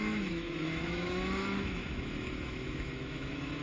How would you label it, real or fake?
fake